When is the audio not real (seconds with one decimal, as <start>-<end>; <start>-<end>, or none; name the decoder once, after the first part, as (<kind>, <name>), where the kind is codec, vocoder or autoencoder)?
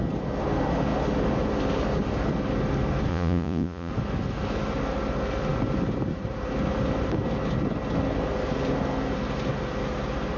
3.1-3.9 (vocoder, Vocos)